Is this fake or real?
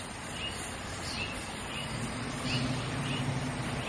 real